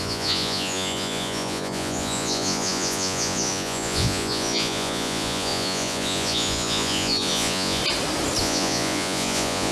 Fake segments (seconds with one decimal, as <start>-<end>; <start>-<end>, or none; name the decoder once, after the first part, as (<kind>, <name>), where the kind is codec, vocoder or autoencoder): 0.0-7.8 (vocoder, Vocos); 8.4-9.7